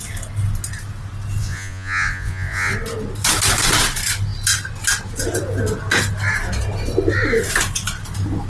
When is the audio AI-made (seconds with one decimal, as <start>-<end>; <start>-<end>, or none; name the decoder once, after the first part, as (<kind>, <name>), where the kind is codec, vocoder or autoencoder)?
1.4-2.7 (vocoder, Vocos)